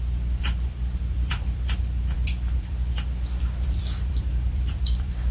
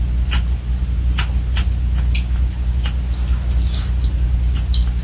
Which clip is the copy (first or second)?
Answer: first